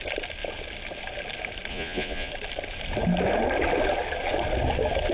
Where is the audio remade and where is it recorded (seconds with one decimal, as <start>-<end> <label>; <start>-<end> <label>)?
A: 0.0-1.7 recorded; 1.7-2.3 remade; 2.3-5.1 recorded